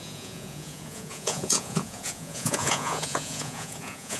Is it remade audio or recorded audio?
remade